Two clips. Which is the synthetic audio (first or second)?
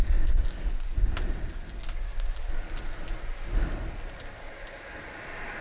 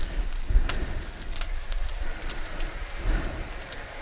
second